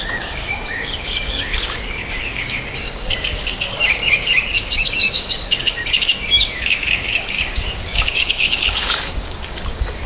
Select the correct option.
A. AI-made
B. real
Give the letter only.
A